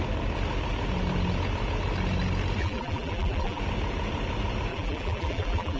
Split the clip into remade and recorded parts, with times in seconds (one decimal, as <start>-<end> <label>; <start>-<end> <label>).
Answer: 0.0-2.6 recorded; 2.6-3.6 remade; 3.6-4.7 recorded; 4.7-5.8 remade